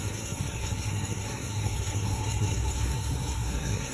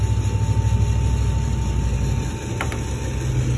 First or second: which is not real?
first